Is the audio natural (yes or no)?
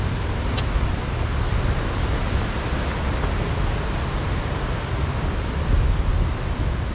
yes